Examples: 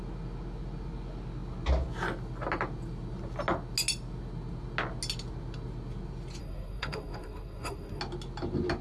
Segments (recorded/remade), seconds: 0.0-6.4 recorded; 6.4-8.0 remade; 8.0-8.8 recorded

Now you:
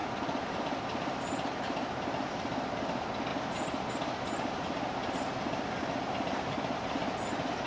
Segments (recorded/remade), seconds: 0.0-0.8 remade; 0.8-3.3 recorded; 3.3-3.9 remade; 3.9-5.0 recorded; 5.0-5.6 remade; 5.6-7.7 recorded

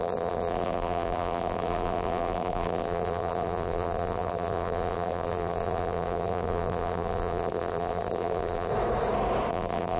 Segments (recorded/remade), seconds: 0.0-8.7 remade; 8.7-9.5 recorded; 9.5-10.0 remade